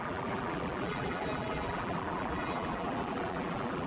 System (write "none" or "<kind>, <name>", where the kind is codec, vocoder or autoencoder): vocoder, BigVGAN v2